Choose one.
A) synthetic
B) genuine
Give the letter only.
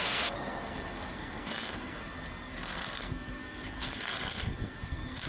A